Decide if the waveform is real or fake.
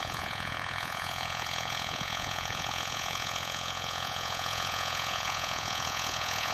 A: fake